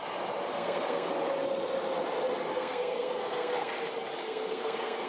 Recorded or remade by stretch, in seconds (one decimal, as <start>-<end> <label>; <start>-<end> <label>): 0.0-0.5 recorded; 0.5-1.1 remade; 1.1-2.5 recorded; 2.5-3.7 remade; 3.7-4.2 recorded; 4.2-5.1 remade